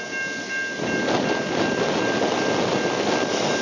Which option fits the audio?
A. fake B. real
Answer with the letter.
B